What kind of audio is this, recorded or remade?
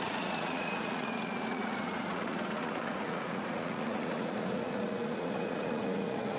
remade